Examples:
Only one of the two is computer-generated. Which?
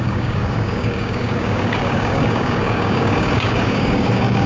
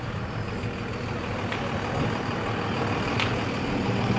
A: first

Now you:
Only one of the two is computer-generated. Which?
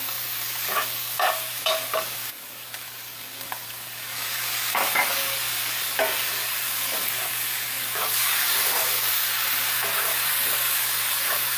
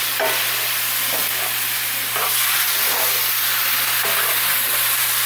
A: first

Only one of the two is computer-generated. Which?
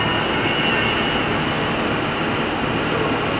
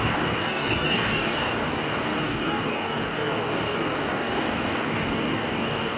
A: second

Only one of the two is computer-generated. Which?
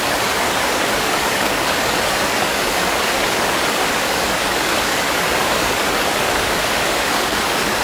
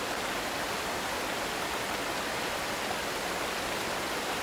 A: first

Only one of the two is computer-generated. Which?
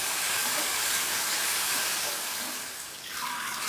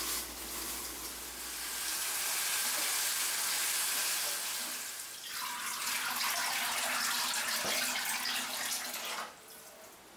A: first